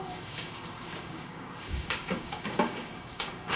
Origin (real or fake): fake